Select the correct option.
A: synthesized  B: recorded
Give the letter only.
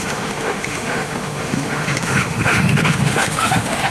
A